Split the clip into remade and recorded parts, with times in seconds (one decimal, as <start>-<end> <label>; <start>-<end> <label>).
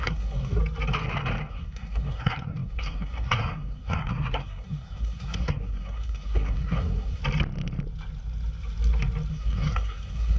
0.0-0.6 remade; 0.6-1.5 recorded; 1.5-7.2 remade; 7.2-9.3 recorded; 9.3-10.4 remade